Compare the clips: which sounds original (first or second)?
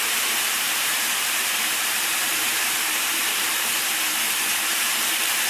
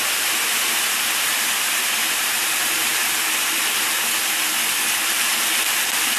second